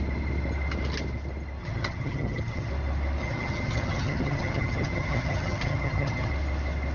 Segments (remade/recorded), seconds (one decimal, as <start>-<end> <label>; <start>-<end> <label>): 0.0-1.6 recorded; 1.6-2.7 remade; 2.7-3.2 recorded; 3.2-6.3 remade; 6.3-6.9 recorded